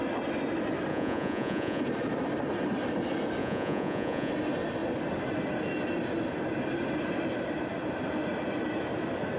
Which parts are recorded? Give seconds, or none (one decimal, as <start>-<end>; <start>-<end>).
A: 0.0-0.9; 1.8-3.4; 4.3-9.4